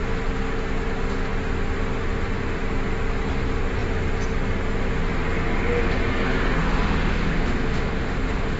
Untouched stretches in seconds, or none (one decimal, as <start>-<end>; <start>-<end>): 0.0-6.6